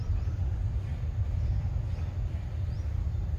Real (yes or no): yes